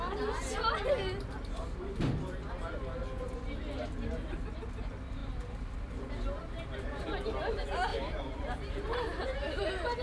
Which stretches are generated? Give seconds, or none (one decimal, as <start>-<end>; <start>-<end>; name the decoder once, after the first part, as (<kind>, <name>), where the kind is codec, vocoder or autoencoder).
5.2-5.7 (vocoder, BigVGAN v2); 7.9-9.6